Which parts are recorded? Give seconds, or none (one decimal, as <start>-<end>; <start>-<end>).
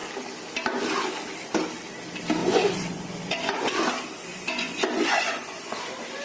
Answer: 0.0-2.4; 3.8-4.3; 5.8-6.2